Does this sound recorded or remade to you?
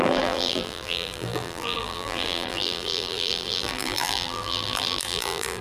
remade